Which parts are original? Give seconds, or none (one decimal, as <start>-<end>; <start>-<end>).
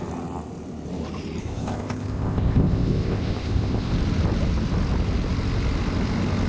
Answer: 0.0-1.4; 3.9-6.5